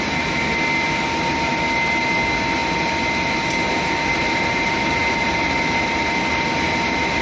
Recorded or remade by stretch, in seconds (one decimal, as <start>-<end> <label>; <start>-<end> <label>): 0.0-7.2 recorded

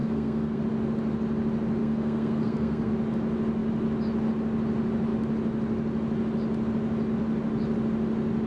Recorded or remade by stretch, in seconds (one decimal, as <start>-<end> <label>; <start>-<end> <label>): 0.0-0.6 remade; 0.6-1.8 recorded; 1.8-2.9 remade; 2.9-8.5 recorded